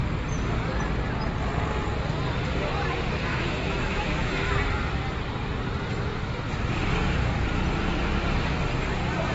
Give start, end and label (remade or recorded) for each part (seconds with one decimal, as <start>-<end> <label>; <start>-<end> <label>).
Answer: 0.0-3.3 recorded; 3.3-4.6 remade; 4.6-9.3 recorded